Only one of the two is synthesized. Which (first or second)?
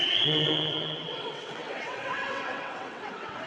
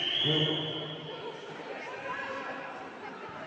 first